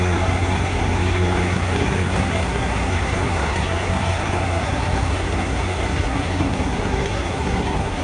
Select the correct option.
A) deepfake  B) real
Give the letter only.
A